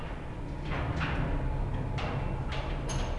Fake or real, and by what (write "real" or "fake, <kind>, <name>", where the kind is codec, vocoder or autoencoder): real